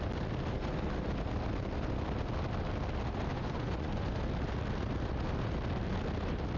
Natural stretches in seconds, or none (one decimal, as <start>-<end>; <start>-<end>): 0.0-3.3; 4.2-6.6